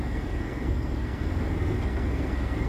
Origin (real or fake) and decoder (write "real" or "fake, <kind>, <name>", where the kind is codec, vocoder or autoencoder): fake, codec, SNAC